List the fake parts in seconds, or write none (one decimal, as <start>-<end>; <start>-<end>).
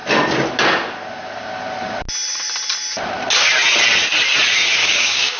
4.8-5.4